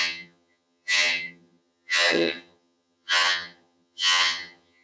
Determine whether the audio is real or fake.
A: fake